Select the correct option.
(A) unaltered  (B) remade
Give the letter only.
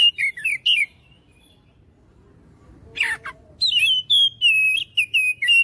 A